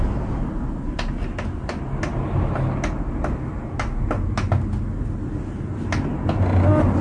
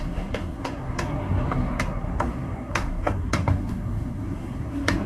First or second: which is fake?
second